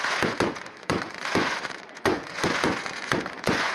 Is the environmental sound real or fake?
fake